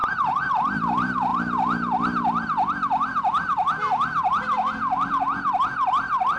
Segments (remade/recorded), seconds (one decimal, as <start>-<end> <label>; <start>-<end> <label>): 0.0-0.5 remade; 0.5-6.4 recorded